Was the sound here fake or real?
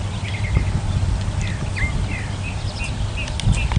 real